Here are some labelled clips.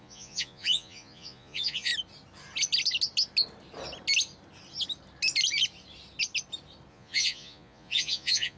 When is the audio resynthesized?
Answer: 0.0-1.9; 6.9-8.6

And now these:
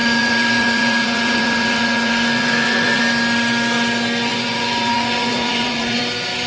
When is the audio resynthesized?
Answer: 0.0-3.0; 4.3-6.0

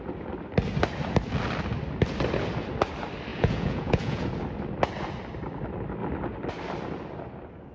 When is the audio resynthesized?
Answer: 3.3-4.3